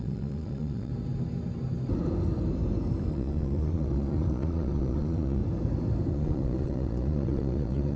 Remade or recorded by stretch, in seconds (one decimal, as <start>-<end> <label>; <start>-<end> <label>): 0.0-0.9 remade; 0.9-3.1 recorded; 3.1-5.4 remade; 5.4-6.1 recorded; 6.1-8.0 remade